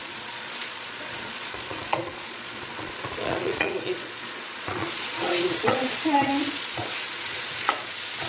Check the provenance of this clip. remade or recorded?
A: remade